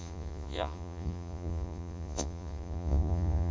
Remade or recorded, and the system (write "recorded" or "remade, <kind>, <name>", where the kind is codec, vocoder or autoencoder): remade, vocoder, Vocos